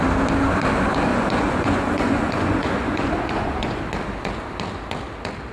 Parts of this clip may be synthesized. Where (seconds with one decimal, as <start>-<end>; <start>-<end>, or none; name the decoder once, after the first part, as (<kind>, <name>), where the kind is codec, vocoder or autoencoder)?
1.1-3.8 (vocoder, Vocos)